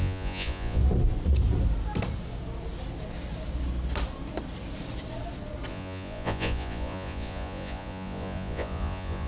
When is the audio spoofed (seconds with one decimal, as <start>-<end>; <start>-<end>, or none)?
0.0-0.8; 5.7-9.3